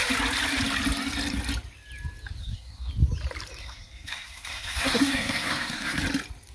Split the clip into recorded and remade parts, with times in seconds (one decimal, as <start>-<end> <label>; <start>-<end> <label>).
0.0-2.4 recorded; 2.4-2.9 remade; 2.9-3.6 recorded; 3.6-6.0 remade; 6.0-6.5 recorded